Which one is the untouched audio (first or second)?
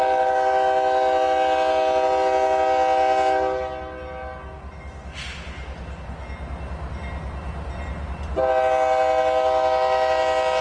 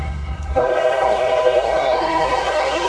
first